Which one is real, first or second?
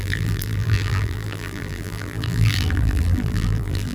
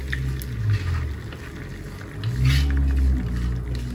second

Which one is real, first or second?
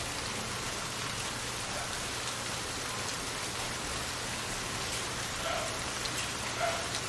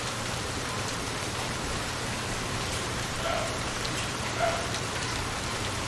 first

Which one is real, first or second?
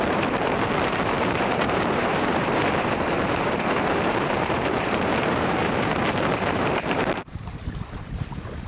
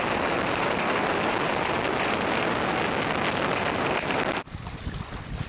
second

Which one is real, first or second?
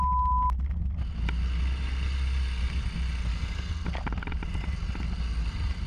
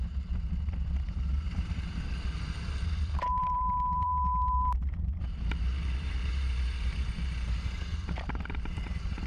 first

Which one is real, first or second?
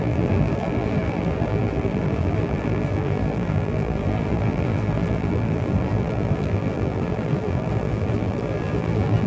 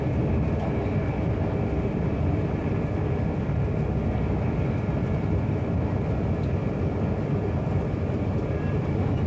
second